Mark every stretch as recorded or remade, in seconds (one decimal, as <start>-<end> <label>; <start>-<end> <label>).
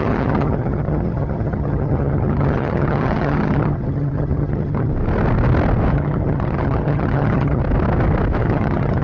0.0-4.9 remade; 4.9-5.9 recorded; 5.9-7.6 remade; 7.6-8.4 recorded; 8.4-9.0 remade